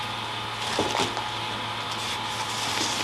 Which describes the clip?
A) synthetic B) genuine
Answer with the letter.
B